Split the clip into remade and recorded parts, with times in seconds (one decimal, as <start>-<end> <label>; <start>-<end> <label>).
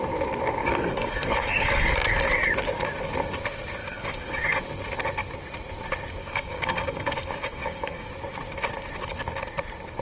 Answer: 0.0-0.6 recorded; 0.6-2.3 remade; 2.3-3.8 recorded; 3.8-4.6 remade; 4.6-6.2 recorded; 6.2-8.1 remade; 8.1-10.0 recorded